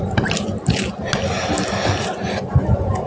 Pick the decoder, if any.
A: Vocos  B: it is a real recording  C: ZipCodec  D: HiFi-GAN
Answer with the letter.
B